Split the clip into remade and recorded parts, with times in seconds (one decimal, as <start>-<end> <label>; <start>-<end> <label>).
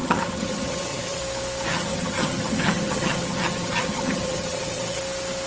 0.0-1.2 remade; 1.2-1.7 recorded; 1.7-5.0 remade; 5.0-5.5 recorded